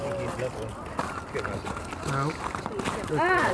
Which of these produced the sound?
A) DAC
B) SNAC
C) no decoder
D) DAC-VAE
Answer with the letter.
C